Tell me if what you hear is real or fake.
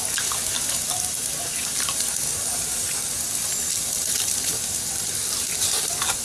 real